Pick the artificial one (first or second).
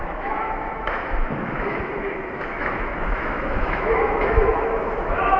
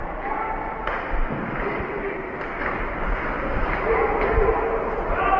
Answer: first